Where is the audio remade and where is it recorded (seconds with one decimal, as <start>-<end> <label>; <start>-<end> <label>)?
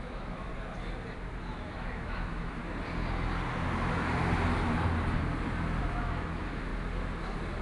0.0-0.5 remade; 0.5-1.4 recorded; 1.4-2.6 remade; 2.6-5.8 recorded; 5.8-6.7 remade; 6.7-7.6 recorded